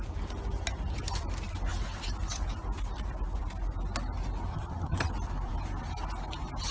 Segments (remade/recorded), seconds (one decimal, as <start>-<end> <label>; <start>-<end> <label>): 0.0-4.5 recorded; 4.5-5.1 remade; 5.1-6.7 recorded